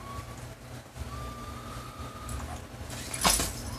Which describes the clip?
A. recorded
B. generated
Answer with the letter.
A